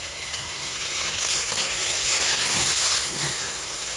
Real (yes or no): no